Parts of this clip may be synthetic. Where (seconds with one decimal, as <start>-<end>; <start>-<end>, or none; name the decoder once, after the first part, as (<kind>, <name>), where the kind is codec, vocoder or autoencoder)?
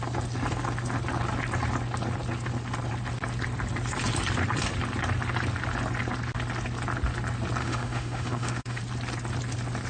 7.6-8.8 (autoencoder, DAC-VAE)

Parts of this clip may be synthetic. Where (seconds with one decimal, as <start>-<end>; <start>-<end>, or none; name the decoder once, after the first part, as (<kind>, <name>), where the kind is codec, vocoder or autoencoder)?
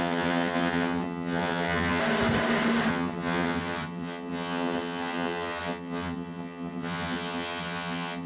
0.0-2.0 (vocoder, HiFi-GAN); 2.9-8.3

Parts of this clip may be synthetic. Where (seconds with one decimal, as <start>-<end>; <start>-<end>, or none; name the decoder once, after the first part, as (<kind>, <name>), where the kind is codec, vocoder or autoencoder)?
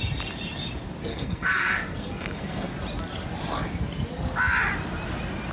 1.1-2.7 (codec, SNAC)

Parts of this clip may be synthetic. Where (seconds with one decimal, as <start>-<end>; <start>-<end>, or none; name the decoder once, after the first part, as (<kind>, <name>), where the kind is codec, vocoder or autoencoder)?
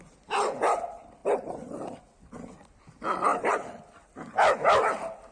1.2-2.0 (vocoder, BigVGAN v2)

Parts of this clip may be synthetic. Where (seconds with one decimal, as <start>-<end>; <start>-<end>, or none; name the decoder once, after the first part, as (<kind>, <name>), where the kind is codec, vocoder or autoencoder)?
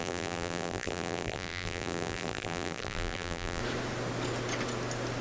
0.0-3.6 (vocoder, BigVGAN v2)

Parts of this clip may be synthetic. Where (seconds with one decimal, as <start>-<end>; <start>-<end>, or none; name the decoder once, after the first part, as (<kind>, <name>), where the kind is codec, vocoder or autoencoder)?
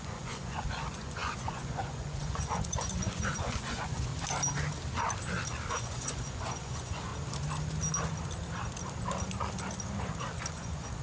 0.0-4.1 (vocoder, Vocos); 5.7-7.1; 10.5-11.0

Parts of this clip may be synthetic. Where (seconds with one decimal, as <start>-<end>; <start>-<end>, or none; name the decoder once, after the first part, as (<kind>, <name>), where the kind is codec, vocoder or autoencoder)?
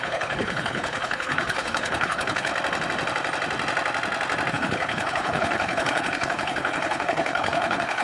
0.0-2.5 (codec, HILCodec); 4.5-8.0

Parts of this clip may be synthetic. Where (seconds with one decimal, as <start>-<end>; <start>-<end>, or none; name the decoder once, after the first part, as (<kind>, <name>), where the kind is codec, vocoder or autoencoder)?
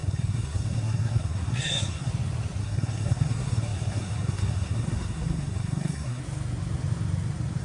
0.0-2.1 (codec, SNAC); 2.6-6.2